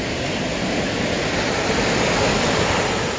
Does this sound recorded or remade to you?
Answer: recorded